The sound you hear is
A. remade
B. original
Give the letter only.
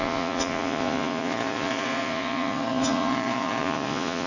A